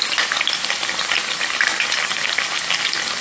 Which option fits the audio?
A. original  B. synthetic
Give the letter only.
A